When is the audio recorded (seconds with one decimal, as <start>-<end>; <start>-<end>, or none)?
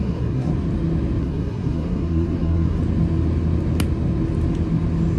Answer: 0.5-1.2; 2.8-5.2